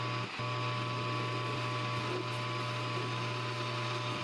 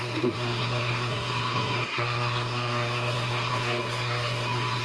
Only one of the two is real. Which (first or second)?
first